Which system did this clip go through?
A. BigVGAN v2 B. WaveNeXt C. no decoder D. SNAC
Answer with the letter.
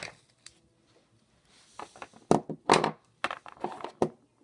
C